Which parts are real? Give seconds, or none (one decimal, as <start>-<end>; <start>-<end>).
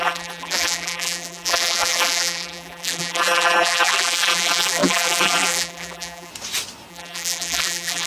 6.3-6.9